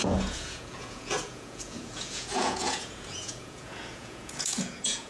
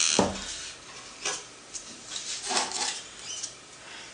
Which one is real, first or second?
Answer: second